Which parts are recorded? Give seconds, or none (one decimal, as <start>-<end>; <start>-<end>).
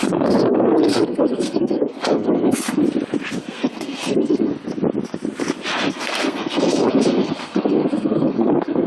2.8-3.4; 4.5-5.9